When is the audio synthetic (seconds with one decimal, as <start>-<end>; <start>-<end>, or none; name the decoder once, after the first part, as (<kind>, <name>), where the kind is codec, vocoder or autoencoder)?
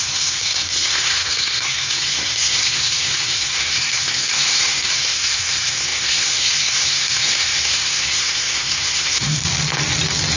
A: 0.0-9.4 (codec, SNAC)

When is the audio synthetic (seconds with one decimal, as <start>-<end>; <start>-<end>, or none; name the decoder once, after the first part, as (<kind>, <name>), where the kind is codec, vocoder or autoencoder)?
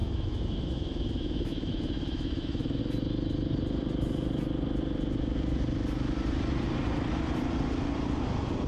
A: 0.0-2.8 (autoencoder, DAC-VAE)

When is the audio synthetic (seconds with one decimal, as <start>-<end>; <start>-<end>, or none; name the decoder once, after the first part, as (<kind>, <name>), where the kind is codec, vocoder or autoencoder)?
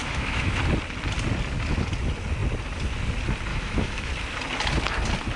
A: 0.0-0.6 (autoencoder, DAC-VAE); 3.5-4.1